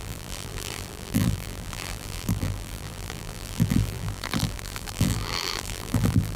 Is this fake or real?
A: fake